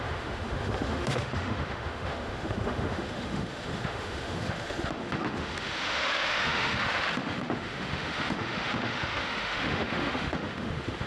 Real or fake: fake